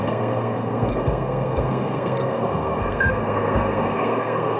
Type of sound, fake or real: fake